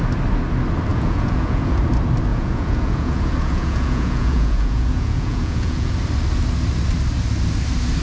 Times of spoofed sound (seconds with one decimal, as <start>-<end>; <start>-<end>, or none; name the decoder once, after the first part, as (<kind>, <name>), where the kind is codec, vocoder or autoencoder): 0.9-1.8 (vocoder, Vocos); 2.3-5.9